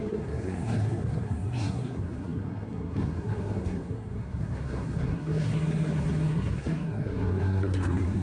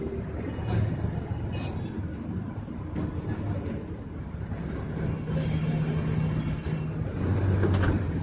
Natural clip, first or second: second